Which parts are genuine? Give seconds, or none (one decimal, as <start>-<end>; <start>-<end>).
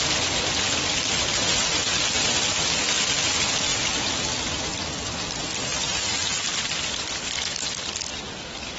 0.0-1.9; 2.6-3.7; 5.2-5.7; 7.7-8.8